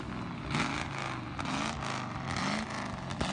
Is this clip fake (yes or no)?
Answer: no